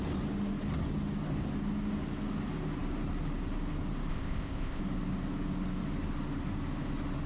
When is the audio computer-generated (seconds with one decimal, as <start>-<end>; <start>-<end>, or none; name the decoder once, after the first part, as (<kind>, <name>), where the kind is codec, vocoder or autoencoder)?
4.1-4.8 (codec, ZipCodec)